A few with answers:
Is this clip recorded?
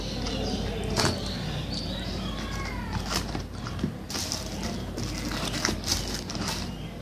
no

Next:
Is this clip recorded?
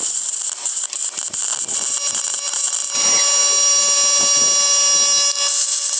yes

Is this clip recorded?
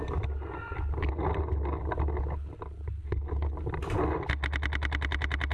yes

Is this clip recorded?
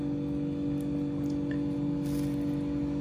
yes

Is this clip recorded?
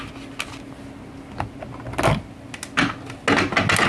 yes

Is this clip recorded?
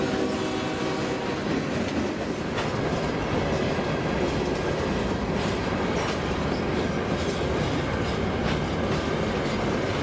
yes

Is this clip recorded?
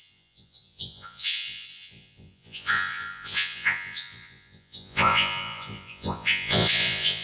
no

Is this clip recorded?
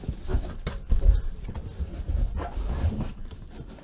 yes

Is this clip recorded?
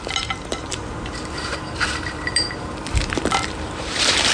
no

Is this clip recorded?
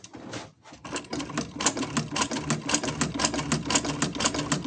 yes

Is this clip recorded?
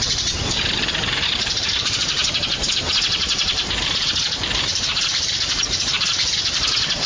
no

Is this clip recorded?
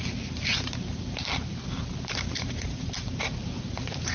no